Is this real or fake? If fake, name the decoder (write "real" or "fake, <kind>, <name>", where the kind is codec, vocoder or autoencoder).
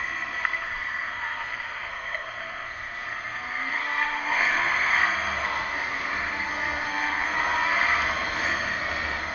fake, codec, SNAC